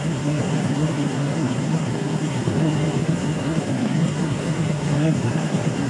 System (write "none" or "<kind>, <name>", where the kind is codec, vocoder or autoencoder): codec, SNAC